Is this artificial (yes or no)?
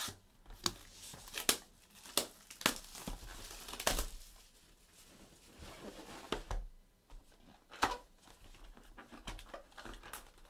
no